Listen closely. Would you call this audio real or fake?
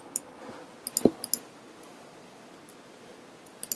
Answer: real